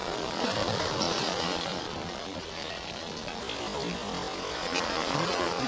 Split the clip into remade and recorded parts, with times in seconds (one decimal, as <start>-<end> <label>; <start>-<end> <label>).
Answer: 0.0-3.4 remade; 3.4-4.6 recorded; 4.6-5.7 remade